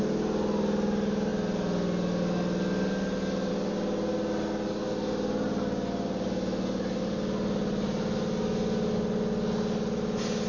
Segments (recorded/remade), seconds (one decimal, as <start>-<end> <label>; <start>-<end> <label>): 0.0-10.5 recorded